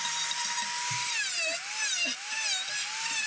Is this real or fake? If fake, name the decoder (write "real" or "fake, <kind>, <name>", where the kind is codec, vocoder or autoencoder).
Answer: real